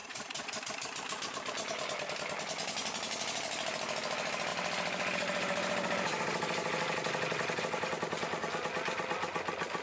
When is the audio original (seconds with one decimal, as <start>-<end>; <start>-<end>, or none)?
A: 0.6-9.8